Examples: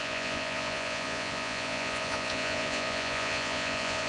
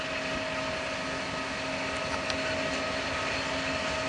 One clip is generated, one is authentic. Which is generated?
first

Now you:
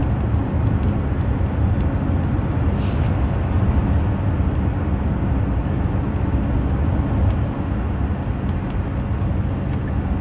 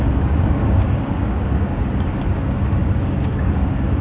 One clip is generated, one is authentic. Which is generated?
second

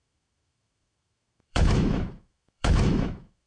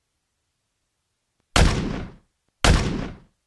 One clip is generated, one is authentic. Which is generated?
first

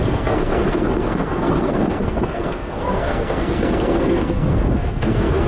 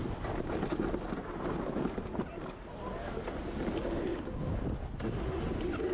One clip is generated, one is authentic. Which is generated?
first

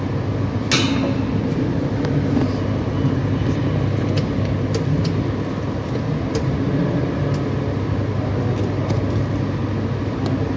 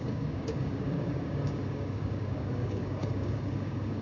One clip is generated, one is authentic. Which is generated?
second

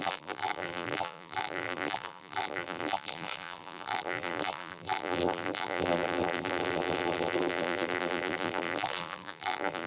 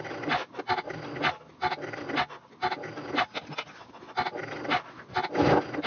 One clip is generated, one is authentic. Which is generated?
first